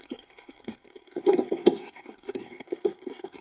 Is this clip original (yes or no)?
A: no